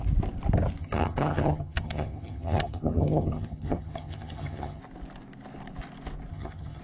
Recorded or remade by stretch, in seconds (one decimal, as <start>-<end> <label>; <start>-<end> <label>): 0.0-0.8 recorded; 0.8-4.8 remade; 4.8-6.3 recorded; 6.3-6.8 remade

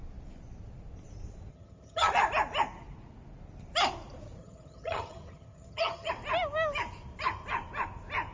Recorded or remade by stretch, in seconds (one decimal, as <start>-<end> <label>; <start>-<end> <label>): 0.0-1.5 recorded; 1.5-2.1 remade; 2.1-4.4 recorded; 4.4-6.1 remade; 6.1-8.3 recorded

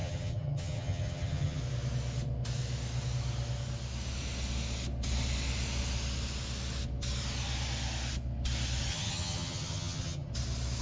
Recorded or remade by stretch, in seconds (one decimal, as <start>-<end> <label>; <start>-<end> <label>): 0.0-1.6 remade; 1.6-8.9 recorded; 8.9-10.3 remade; 10.3-10.8 recorded

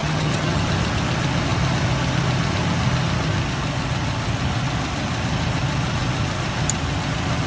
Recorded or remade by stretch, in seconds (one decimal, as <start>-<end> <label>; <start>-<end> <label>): 0.0-0.6 remade; 0.6-7.5 recorded

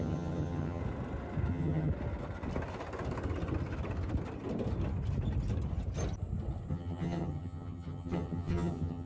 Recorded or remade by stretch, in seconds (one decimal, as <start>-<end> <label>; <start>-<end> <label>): 0.0-0.8 remade; 0.8-1.5 recorded; 1.5-1.9 remade; 1.9-6.7 recorded; 6.7-9.1 remade

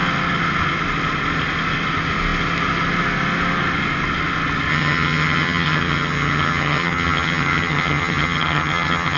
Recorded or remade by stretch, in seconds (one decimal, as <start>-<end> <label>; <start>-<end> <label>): 0.0-4.7 recorded; 4.7-9.2 remade

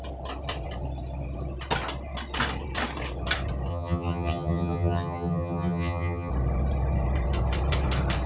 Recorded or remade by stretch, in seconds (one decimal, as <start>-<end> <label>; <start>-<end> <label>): 0.0-3.7 recorded; 3.7-6.3 remade; 6.3-8.3 recorded